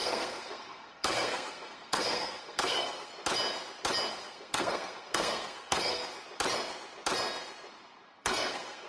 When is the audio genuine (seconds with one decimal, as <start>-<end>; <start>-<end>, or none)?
3.1-4.1; 6.0-8.2